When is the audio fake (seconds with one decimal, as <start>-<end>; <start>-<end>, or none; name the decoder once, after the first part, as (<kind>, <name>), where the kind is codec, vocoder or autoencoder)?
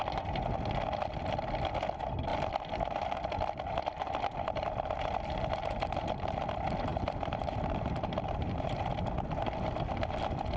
6.9-8.9 (vocoder, BigVGAN v2)